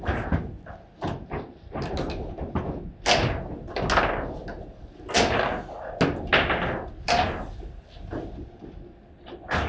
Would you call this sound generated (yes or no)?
no